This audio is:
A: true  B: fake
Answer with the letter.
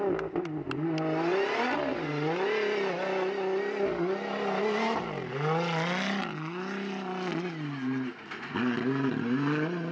A